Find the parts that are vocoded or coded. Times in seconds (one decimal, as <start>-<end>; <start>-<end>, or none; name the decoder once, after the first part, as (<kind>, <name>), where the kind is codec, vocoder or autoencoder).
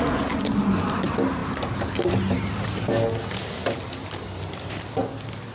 none